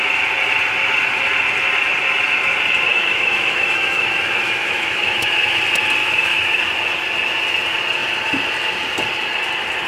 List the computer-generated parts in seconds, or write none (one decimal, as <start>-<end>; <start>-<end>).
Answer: 2.9-5.6; 6.0-6.6